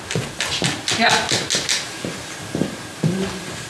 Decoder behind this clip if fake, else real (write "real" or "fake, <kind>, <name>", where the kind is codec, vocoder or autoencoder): real